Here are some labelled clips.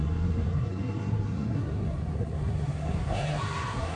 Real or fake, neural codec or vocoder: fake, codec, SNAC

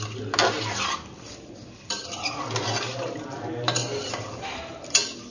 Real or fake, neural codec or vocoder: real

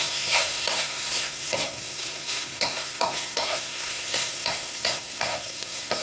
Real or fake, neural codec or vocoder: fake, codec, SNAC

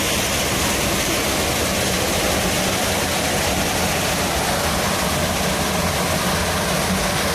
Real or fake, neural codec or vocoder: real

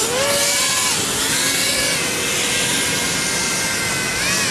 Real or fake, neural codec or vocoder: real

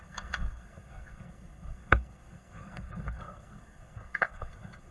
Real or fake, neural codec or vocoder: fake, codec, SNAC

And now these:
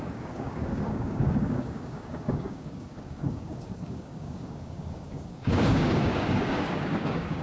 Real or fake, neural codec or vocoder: fake, codec, DAC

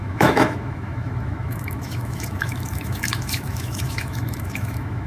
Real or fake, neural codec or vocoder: fake, autoencoder, DAC-VAE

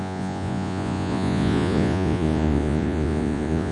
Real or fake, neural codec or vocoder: fake, vocoder, Vocos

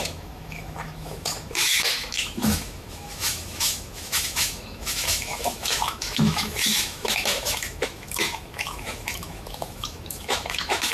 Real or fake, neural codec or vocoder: fake, autoencoder, DAC-VAE